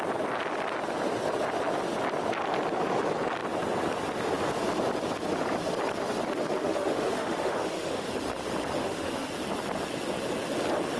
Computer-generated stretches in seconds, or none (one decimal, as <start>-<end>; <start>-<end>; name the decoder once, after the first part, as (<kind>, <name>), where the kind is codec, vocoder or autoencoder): 6.6-8.1 (autoencoder, DAC-VAE); 8.8-9.3